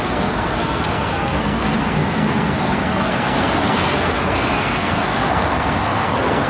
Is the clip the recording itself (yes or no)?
no